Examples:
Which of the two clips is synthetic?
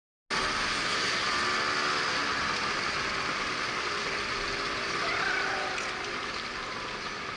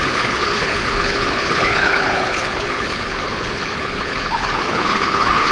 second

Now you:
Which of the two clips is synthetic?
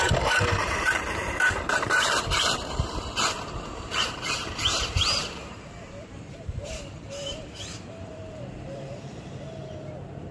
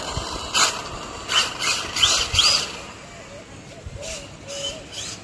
first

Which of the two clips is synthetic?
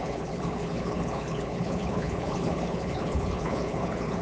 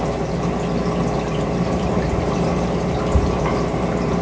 first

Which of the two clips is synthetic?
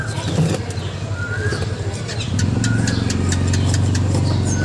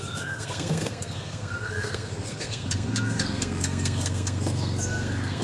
second